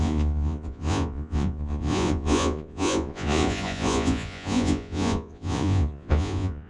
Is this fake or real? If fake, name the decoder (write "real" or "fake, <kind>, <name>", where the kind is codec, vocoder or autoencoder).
fake, vocoder, Vocos